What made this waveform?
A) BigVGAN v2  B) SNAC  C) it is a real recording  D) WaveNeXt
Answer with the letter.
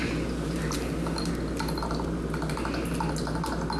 C